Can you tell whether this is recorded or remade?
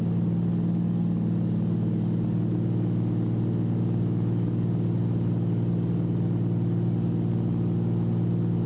recorded